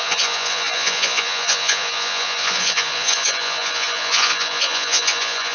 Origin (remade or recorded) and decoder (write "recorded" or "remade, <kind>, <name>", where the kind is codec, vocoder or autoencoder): remade, vocoder, Vocos